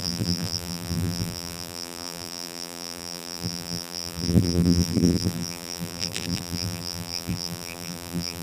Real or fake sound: fake